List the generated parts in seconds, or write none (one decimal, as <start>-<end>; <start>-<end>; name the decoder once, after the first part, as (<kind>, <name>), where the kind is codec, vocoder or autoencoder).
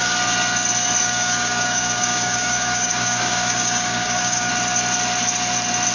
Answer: 1.0-4.5 (codec, DAC)